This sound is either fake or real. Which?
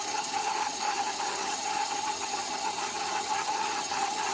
fake